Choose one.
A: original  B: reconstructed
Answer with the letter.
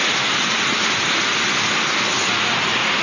A